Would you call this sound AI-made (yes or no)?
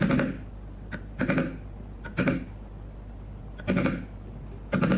no